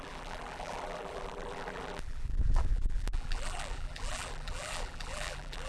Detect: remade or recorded remade